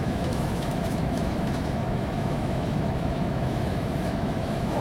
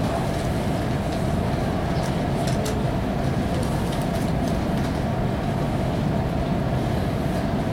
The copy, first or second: first